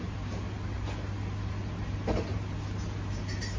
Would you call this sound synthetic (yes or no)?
no